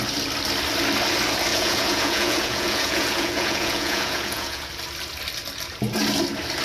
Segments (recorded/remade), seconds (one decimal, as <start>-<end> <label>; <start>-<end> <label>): 0.0-1.5 recorded; 1.5-4.7 remade; 4.7-6.6 recorded

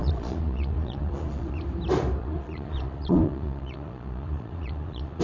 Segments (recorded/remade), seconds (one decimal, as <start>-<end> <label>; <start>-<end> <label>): 0.0-1.6 remade; 1.6-2.2 recorded; 2.2-5.2 remade